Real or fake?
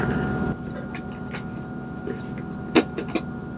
real